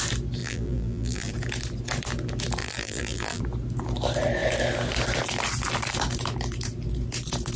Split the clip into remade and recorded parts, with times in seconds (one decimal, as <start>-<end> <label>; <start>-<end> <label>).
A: 0.0-0.4 recorded; 0.4-1.3 remade; 1.3-2.6 recorded; 2.6-3.4 remade; 3.4-7.6 recorded